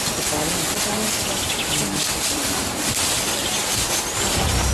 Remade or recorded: recorded